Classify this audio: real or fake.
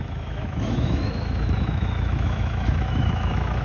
fake